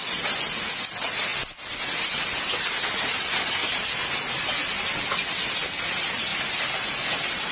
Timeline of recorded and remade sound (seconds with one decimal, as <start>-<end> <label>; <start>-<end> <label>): 0.0-7.5 recorded

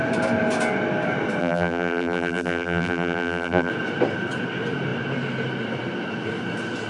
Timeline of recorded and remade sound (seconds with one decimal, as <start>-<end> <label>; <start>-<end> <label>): 0.0-1.4 recorded; 1.4-3.7 remade; 3.7-6.9 recorded